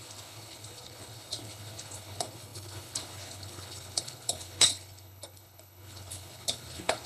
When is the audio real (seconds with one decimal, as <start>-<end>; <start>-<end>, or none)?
none